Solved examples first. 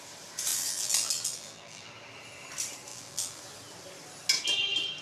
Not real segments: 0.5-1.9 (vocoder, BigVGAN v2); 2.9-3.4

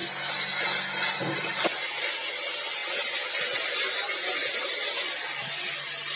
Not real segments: none

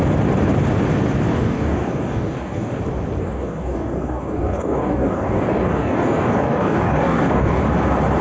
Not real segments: 1.3-2.8 (codec, DAC); 3.2-7.6